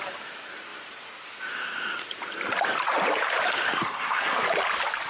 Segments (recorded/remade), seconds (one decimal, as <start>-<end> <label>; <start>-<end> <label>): 0.0-3.8 recorded; 3.8-4.4 remade; 4.4-5.1 recorded